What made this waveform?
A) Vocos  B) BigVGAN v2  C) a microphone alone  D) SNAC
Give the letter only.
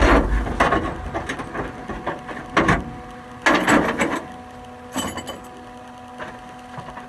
C